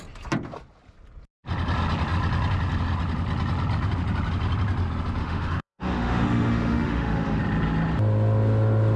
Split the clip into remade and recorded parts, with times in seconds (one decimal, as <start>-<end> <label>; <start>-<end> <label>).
0.0-5.2 recorded; 5.2-7.4 remade; 7.4-9.0 recorded